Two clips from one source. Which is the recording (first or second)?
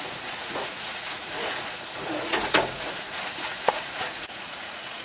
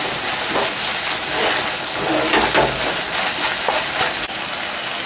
second